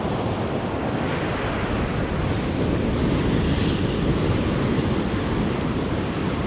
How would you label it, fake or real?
real